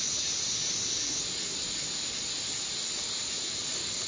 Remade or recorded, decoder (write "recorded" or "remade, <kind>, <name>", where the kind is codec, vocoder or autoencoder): recorded